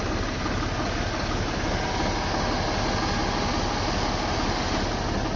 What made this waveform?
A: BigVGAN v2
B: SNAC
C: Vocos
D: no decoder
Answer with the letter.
D